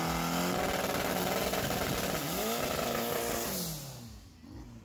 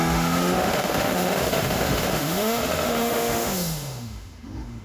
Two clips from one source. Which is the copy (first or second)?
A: second